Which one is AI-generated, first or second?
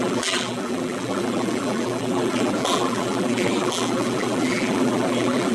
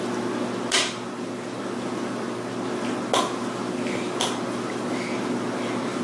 first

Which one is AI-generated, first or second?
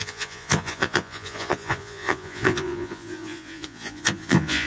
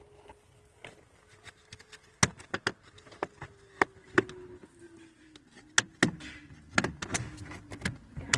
first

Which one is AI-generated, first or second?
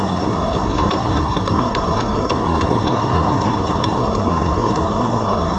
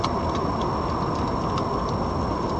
first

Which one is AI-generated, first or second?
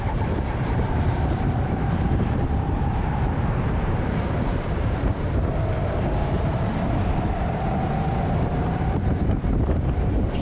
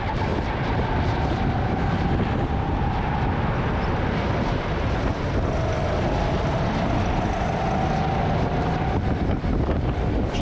first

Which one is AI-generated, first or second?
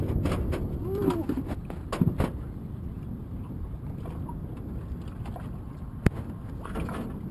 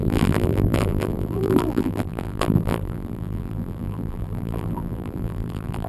second